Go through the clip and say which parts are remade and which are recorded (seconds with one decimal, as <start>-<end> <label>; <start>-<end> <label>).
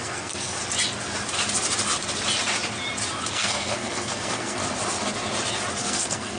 0.0-0.6 remade; 0.6-3.3 recorded; 3.3-4.6 remade; 4.6-5.8 recorded; 5.8-6.4 remade